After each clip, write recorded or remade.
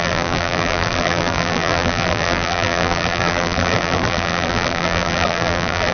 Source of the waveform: remade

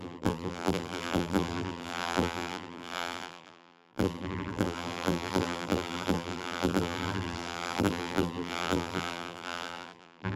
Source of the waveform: remade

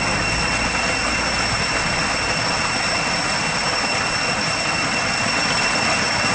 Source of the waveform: recorded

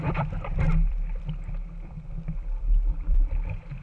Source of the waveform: remade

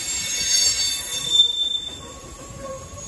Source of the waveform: recorded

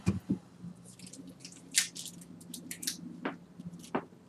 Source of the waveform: recorded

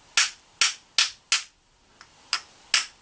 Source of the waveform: recorded